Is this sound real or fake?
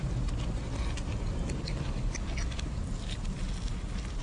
real